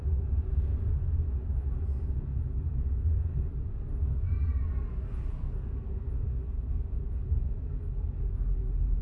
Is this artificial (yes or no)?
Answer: no